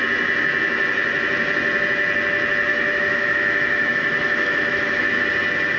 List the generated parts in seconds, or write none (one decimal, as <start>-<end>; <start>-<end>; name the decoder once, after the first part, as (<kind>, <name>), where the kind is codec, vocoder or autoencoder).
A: 2.7-5.0 (autoencoder, DAC-VAE)